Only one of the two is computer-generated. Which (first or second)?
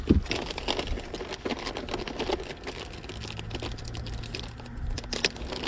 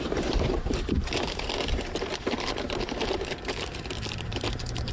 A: second